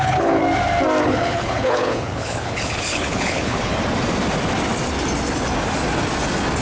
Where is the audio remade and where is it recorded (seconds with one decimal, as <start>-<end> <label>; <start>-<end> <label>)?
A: 0.0-0.4 remade; 0.4-1.0 recorded; 1.0-3.7 remade; 3.7-6.6 recorded